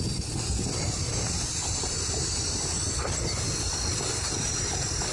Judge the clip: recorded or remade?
recorded